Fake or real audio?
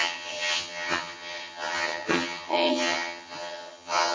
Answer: fake